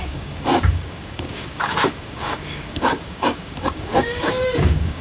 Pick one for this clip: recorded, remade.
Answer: remade